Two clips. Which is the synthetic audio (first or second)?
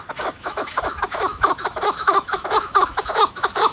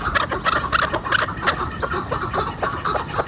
first